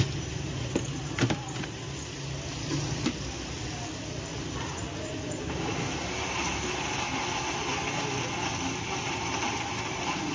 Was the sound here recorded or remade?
recorded